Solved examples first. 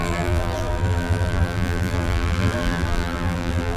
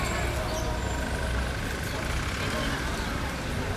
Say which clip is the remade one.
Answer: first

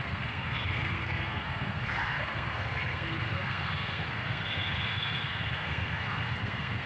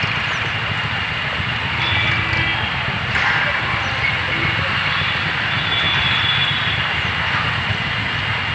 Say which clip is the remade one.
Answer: first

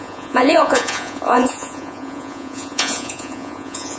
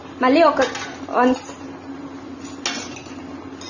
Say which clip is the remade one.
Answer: first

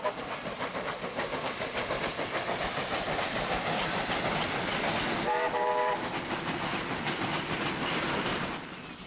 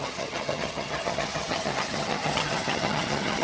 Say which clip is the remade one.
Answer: second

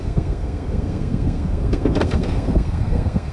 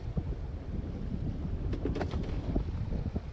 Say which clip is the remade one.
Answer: first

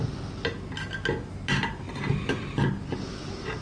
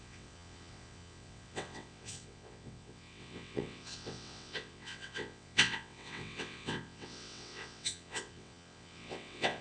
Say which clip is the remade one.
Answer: second